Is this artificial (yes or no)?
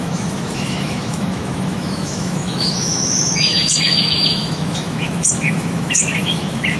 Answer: yes